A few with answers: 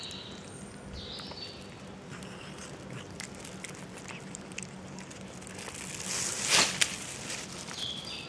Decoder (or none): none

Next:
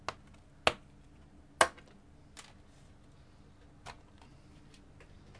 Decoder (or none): none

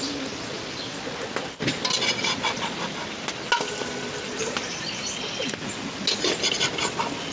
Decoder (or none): none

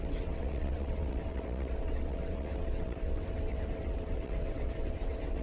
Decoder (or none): vocoder, WaveNeXt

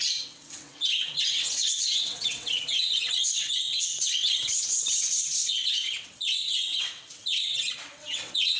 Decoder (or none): vocoder, WaveNeXt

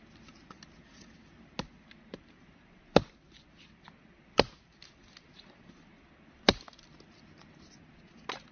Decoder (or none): none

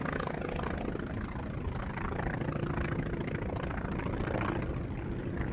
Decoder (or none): none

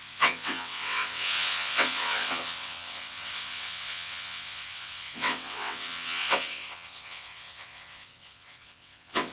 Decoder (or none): vocoder, WaveNeXt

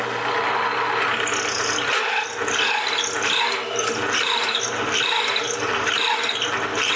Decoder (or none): none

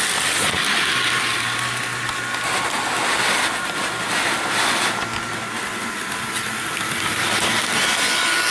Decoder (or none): none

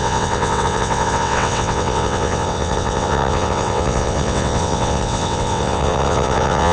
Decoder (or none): vocoder, WaveNeXt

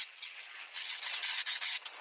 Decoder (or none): vocoder, WaveNeXt